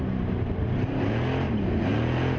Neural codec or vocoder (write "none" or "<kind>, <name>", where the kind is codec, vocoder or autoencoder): none